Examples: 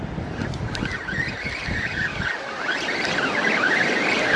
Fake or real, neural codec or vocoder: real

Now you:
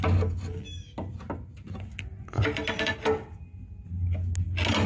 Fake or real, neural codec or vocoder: real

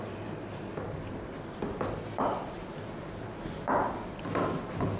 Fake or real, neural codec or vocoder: real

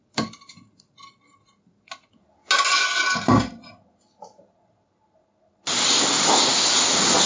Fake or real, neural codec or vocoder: real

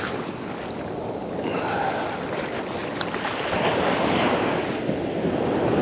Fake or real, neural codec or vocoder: real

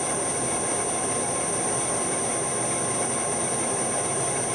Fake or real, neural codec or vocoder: real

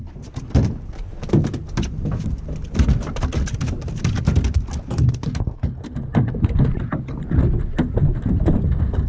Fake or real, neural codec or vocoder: real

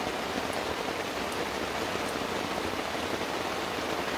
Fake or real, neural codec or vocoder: real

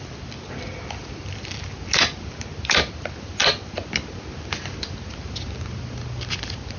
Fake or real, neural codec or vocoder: real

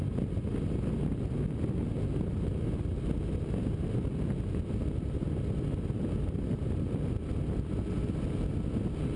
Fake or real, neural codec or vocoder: real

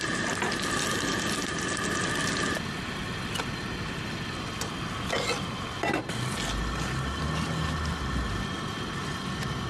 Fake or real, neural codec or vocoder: real